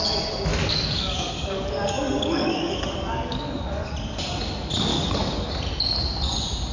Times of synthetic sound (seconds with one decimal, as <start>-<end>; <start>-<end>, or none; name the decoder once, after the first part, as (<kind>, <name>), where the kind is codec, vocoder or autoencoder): 0.5-3.9 (codec, DAC); 4.9-5.5